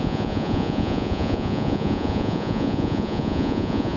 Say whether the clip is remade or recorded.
remade